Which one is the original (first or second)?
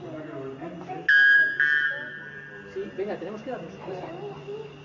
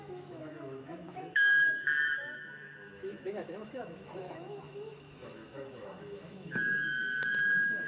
first